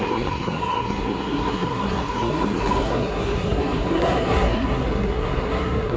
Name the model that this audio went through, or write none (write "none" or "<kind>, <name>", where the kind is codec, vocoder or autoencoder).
codec, SNAC